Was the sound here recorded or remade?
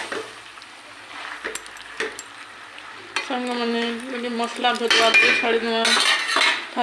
recorded